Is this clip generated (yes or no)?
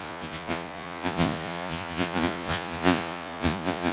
yes